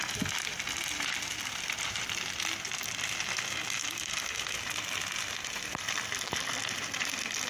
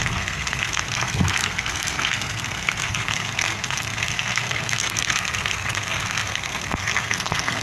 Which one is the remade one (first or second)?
second